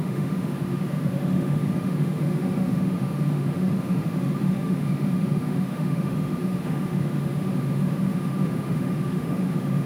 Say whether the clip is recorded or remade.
remade